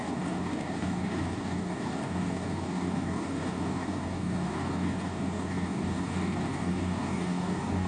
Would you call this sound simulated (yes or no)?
yes